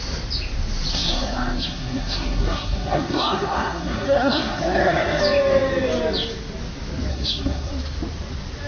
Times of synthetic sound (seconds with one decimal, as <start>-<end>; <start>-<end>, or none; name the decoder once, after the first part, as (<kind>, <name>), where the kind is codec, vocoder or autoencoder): 0.9-5.2 (codec, SNAC); 7.1-7.7

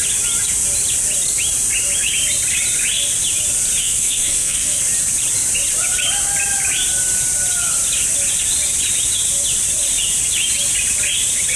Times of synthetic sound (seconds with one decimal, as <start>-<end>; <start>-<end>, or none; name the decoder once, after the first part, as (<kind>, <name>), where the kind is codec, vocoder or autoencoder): 3.8-4.8 (codec, SNAC)

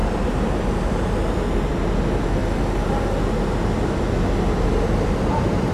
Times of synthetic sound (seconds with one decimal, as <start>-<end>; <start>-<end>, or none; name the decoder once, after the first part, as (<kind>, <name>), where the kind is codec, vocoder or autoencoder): none

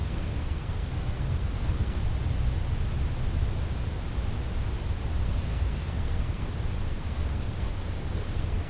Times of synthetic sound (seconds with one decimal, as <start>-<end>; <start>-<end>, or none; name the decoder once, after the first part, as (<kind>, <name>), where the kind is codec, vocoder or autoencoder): 0.0-2.0 (codec, SNAC); 5.2-6.5; 6.9-8.7

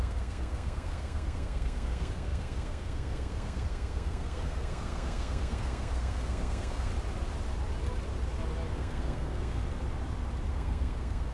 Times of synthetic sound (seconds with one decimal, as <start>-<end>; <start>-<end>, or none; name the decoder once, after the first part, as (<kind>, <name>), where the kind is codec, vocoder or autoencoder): 0.0-6.9 (codec, SNAC); 8.7-9.6; 10.5-11.3